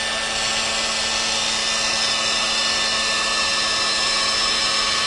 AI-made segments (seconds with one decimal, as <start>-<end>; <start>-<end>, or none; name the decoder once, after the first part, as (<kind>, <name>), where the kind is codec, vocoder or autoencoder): none